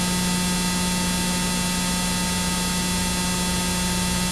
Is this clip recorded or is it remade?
recorded